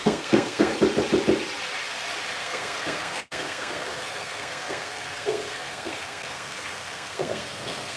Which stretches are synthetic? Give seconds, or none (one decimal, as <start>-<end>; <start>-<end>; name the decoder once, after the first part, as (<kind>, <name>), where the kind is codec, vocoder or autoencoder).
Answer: 0.0-0.7 (codec, SNAC); 2.4-8.0